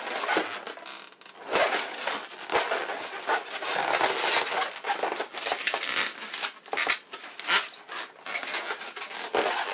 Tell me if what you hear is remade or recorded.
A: recorded